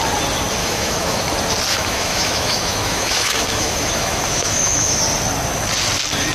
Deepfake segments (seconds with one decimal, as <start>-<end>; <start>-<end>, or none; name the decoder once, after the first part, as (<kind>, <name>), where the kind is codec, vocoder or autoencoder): 0.6-1.2 (autoencoder, DAC-VAE); 1.7-5.0